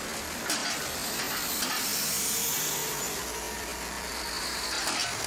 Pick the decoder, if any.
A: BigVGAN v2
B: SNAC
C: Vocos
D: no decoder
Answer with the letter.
D